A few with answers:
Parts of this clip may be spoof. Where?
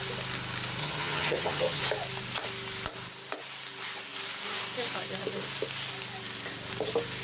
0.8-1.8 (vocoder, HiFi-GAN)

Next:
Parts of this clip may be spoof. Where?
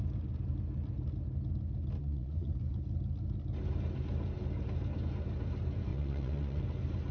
2.0-2.5 (vocoder, Vocos); 5.9-6.6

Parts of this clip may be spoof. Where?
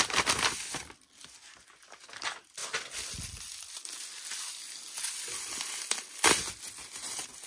none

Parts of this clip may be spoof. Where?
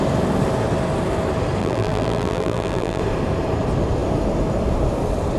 1.6-3.0 (vocoder, BigVGAN v2)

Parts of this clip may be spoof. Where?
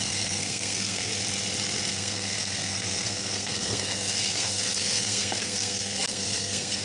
0.0-1.1 (codec, SNAC); 1.9-6.8